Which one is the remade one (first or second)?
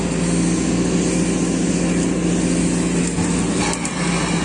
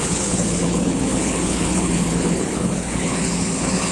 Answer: second